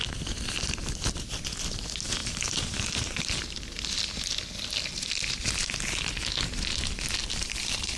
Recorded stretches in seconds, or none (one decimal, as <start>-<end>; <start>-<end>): 0.0-2.2; 3.2-8.0